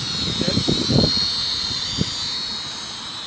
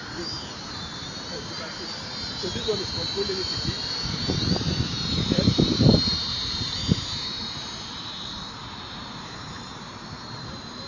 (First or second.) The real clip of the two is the first